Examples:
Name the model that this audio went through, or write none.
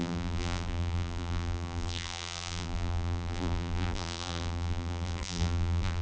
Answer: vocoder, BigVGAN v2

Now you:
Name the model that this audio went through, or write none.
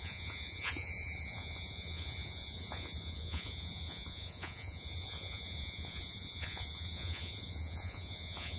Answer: vocoder, Vocos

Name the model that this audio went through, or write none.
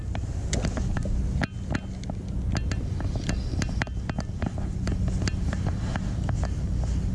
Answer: none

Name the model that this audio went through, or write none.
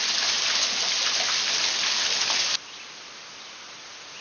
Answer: none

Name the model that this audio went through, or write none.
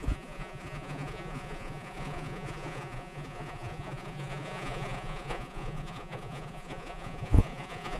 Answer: vocoder, Vocos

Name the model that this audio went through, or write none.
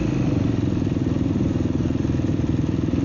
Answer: none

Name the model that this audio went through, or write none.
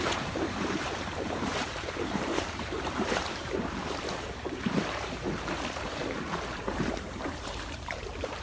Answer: vocoder, BigVGAN v2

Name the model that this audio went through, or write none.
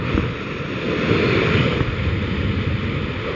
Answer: none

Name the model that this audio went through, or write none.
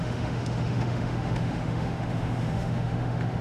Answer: autoencoder, DAC-VAE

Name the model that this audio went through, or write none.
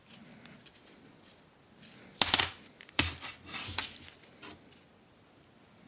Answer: none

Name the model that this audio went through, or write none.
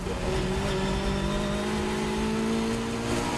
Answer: none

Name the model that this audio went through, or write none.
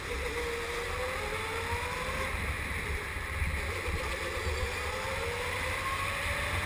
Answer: none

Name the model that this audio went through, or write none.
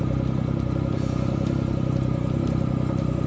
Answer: none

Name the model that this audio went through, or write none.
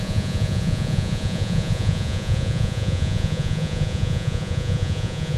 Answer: vocoder, Vocos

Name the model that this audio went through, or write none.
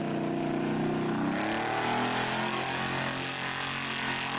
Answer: none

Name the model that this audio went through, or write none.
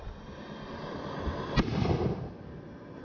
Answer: none